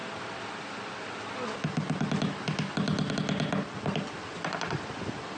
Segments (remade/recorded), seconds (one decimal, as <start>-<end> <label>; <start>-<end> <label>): 0.0-5.4 recorded